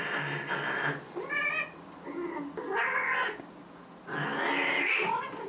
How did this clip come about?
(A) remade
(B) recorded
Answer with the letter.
B